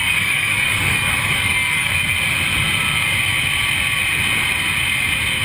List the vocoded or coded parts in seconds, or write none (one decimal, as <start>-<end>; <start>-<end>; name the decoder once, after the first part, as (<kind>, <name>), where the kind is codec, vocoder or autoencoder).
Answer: 0.0-1.9 (codec, DAC)